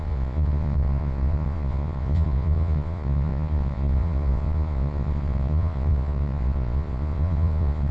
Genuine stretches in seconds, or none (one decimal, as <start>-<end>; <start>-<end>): none